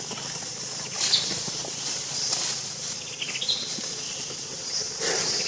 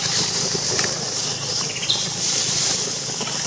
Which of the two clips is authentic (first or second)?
first